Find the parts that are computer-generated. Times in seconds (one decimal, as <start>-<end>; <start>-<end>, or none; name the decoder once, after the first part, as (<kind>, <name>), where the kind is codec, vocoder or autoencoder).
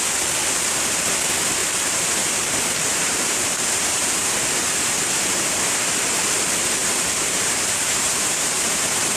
1.6-4.3 (vocoder, BigVGAN v2); 6.8-9.2